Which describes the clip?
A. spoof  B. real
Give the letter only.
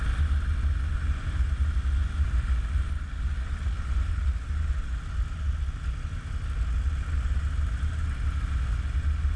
B